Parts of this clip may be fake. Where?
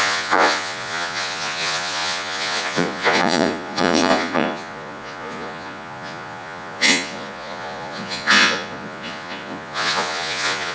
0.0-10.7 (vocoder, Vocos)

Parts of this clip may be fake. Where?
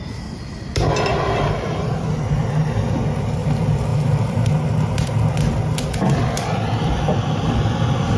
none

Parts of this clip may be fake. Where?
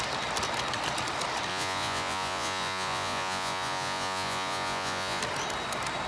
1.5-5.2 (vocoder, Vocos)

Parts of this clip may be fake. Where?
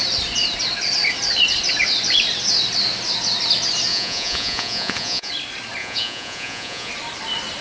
3.9-5.3 (vocoder, Vocos); 5.8-6.9